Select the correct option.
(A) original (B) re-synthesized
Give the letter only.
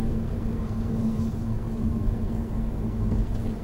B